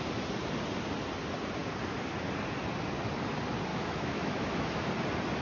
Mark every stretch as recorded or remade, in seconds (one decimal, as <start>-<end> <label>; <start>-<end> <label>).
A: 0.0-3.7 recorded; 3.7-4.9 remade; 4.9-5.4 recorded